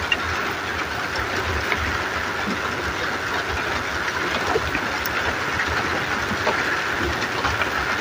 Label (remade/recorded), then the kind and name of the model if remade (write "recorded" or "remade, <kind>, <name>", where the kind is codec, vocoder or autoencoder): recorded